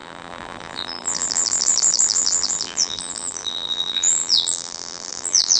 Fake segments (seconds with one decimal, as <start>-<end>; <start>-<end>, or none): 0.0-5.6